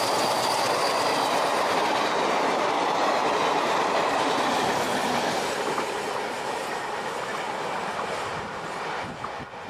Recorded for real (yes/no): yes